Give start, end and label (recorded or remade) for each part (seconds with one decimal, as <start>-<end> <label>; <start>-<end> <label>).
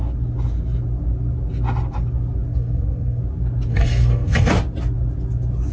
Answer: 0.0-2.5 recorded; 2.5-3.2 remade; 3.2-3.7 recorded; 3.7-4.5 remade; 4.5-5.7 recorded